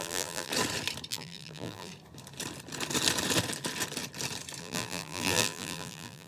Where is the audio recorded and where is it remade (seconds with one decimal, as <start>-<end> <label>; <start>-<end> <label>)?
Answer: 0.0-0.5 remade; 0.5-1.1 recorded; 1.1-1.9 remade; 1.9-4.6 recorded; 4.6-6.3 remade